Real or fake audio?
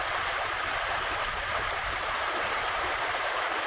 fake